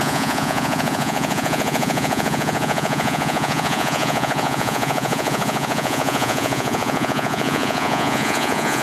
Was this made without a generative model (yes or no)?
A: no